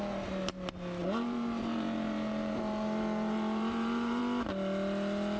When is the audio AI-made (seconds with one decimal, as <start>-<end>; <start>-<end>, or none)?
1.0-4.2